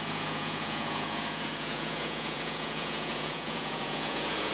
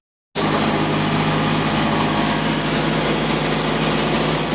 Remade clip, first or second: first